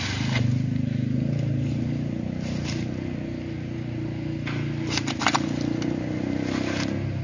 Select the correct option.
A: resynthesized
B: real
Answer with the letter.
B